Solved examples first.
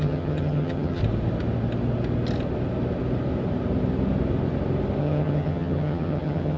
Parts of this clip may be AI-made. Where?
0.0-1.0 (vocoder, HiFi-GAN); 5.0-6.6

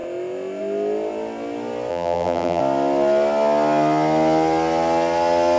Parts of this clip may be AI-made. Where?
1.9-2.6 (vocoder, BigVGAN v2)

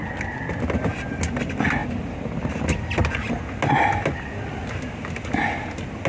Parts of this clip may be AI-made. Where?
none

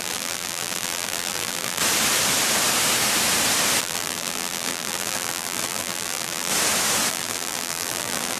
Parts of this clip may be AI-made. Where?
0.0-1.8 (vocoder, BigVGAN v2); 3.8-6.5; 7.1-8.4

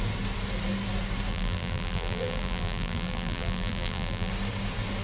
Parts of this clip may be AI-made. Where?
1.3-4.3 (vocoder, BigVGAN v2)